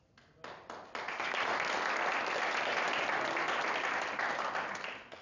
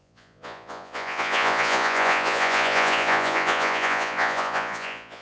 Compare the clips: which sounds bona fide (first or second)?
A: first